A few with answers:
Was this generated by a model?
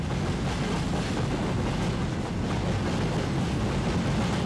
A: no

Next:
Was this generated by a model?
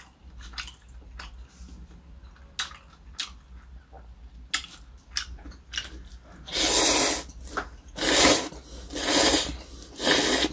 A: no